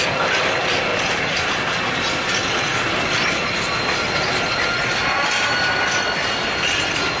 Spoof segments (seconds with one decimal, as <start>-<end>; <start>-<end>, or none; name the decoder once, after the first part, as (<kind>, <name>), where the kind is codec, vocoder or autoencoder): 0.9-1.7 (vocoder, BigVGAN v2)